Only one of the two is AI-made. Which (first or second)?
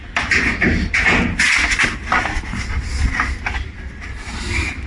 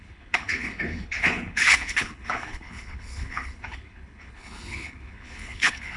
second